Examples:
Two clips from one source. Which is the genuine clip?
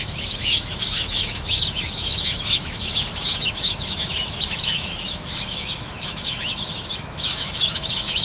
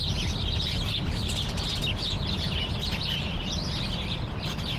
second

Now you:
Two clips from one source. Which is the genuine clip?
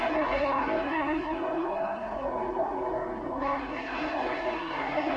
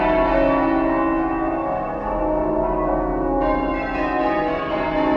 second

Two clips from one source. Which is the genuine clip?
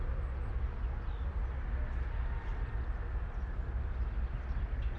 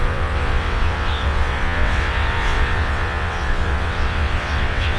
first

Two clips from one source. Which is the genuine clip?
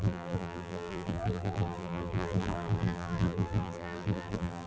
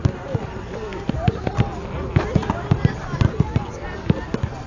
second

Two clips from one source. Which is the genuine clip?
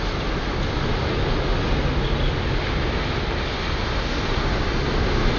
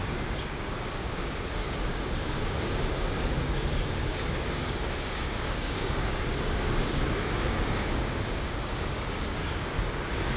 first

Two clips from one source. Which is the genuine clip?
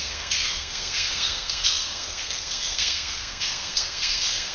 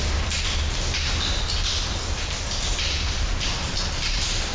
second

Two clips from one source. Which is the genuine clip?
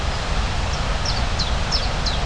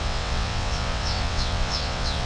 first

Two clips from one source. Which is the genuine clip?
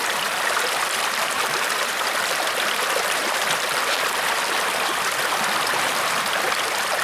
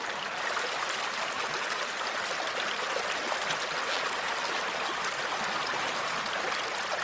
second